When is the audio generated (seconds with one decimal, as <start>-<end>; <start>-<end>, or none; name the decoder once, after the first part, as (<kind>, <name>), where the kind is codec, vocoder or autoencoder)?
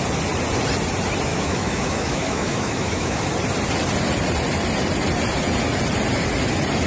1.3-3.2 (autoencoder, DAC-VAE)